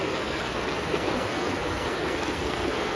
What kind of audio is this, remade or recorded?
remade